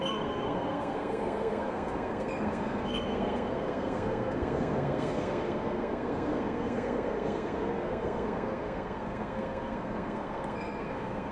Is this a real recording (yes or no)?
no